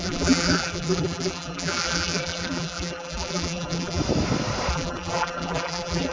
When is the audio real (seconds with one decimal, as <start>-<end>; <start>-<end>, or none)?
4.0-4.7